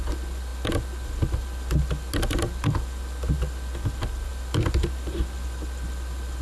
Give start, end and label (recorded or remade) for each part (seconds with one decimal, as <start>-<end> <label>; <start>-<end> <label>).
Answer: 0.0-6.4 recorded